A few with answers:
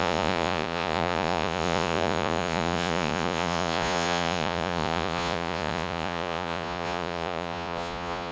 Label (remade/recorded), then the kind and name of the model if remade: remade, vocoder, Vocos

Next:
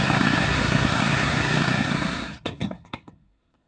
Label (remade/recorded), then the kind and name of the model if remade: remade, codec, SNAC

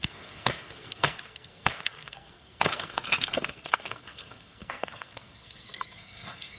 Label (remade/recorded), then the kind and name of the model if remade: remade, codec, SNAC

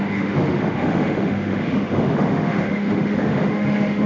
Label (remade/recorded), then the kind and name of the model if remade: remade, autoencoder, DAC-VAE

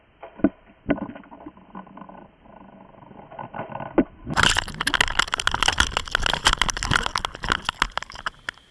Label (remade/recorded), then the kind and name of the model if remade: recorded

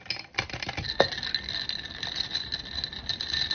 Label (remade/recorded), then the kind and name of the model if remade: recorded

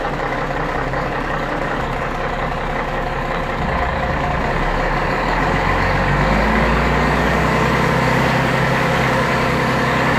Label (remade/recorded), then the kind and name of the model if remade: remade, codec, DAC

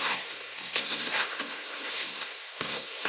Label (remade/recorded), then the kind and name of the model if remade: remade, codec, SNAC